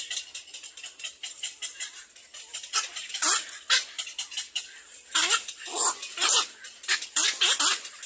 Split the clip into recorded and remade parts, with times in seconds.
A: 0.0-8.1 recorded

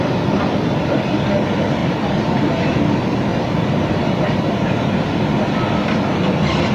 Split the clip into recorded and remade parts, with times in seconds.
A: 0.0-1.8 recorded; 1.8-2.6 remade; 2.6-3.3 recorded; 3.3-6.7 remade

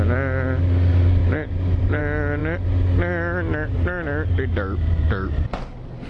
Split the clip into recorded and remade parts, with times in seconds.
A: 0.0-1.2 recorded; 1.2-2.0 remade; 2.0-6.1 recorded